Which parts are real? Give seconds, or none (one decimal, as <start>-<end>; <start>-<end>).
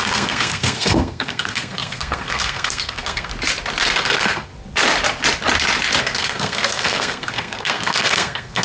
3.3-3.9; 4.5-6.0